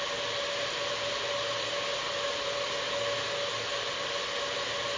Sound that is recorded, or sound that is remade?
recorded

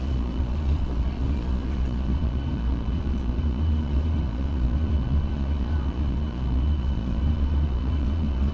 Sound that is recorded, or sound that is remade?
remade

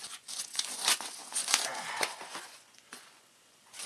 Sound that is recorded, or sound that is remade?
remade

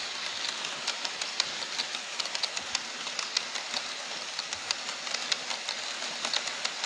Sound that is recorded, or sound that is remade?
recorded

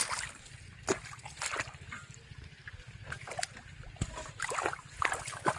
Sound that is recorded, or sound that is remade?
recorded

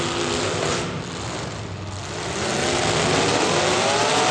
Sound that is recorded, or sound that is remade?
recorded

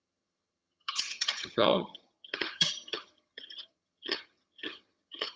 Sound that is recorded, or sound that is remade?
remade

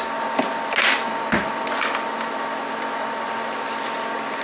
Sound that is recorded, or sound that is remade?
recorded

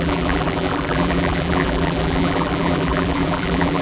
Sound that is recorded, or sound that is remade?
remade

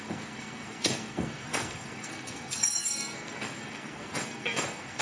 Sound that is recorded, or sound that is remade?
remade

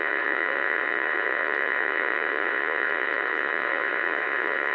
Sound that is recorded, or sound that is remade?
remade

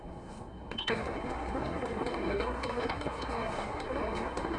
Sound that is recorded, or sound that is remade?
remade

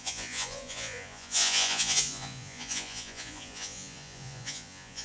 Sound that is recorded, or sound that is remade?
remade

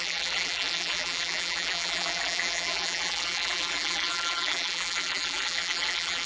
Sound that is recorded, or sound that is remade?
remade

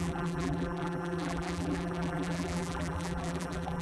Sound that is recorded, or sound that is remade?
remade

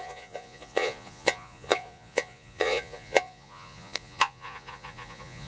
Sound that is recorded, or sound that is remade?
remade